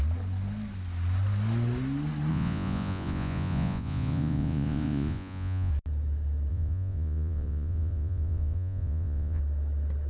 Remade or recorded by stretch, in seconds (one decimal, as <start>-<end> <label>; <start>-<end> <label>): 0.0-2.3 recorded; 2.3-5.7 remade; 5.7-6.5 recorded; 6.5-9.4 remade; 9.4-10.1 recorded